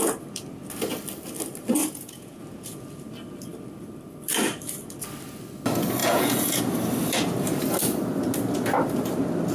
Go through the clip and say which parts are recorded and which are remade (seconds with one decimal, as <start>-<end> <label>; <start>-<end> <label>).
0.0-1.8 recorded; 1.8-2.4 remade; 2.4-6.0 recorded; 6.0-6.6 remade; 6.6-9.5 recorded